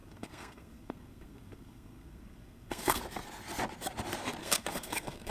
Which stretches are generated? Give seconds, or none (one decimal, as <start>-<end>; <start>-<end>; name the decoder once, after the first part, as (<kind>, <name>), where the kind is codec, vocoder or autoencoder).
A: 0.0-3.0 (codec, SNAC); 4.4-5.3